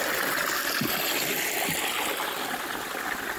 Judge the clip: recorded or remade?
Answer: recorded